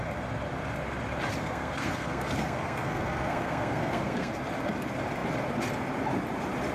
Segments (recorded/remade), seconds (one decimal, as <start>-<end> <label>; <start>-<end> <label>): 0.0-1.3 recorded; 1.3-4.3 remade; 4.3-6.7 recorded